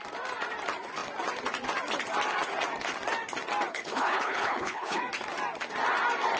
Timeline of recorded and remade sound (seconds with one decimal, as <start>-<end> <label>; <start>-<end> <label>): 0.0-3.7 recorded; 3.7-5.0 remade; 5.0-6.4 recorded